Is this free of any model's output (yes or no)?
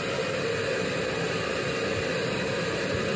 yes